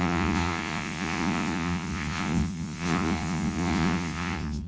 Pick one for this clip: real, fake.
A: fake